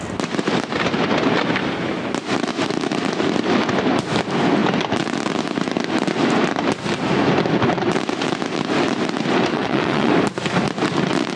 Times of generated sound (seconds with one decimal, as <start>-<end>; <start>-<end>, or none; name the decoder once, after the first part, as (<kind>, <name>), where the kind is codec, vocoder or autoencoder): 9.5-10.1 (vocoder, WaveNeXt)